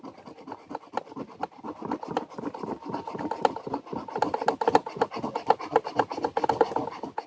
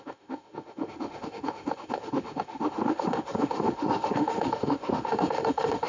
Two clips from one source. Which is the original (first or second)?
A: first